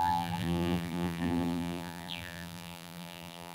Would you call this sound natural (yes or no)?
no